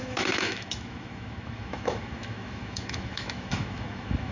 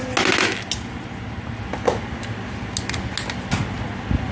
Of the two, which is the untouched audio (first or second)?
second